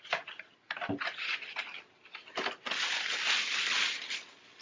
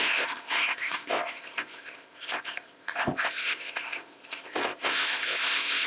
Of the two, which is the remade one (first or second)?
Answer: second